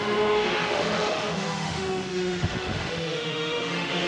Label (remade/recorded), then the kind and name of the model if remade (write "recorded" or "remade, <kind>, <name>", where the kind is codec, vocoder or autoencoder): remade, autoencoder, DAC-VAE